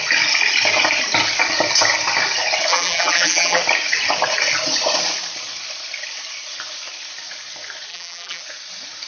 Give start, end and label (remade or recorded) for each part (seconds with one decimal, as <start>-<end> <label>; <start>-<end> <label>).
0.0-2.7 recorded; 2.7-3.6 remade; 3.6-7.9 recorded; 7.9-8.4 remade; 8.4-9.1 recorded